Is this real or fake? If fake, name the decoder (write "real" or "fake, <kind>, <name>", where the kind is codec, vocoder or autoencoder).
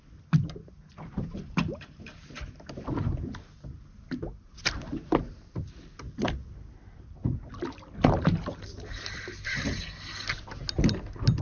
real